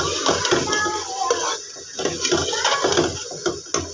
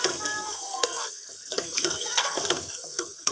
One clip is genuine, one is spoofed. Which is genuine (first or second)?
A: first